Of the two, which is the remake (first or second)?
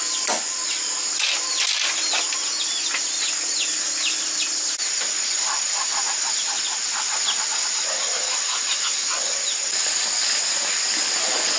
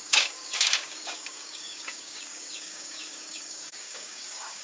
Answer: second